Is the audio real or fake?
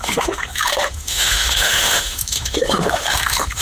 fake